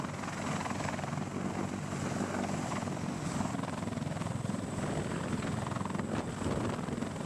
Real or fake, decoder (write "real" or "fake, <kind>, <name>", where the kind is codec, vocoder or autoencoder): real